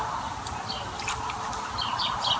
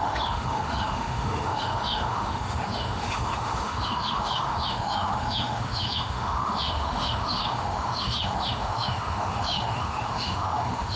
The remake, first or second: second